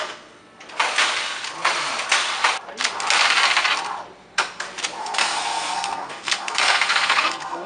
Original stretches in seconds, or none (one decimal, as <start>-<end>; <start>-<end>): 0.4-5.0